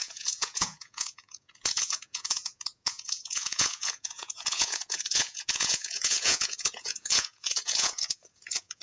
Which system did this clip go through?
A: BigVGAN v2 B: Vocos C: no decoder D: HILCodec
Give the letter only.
B